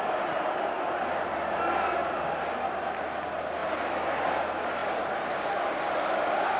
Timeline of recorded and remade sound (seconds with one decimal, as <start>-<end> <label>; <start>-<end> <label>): 0.0-6.6 recorded